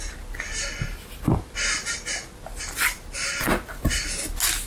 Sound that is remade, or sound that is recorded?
recorded